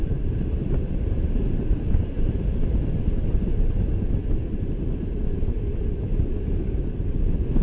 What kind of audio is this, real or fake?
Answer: fake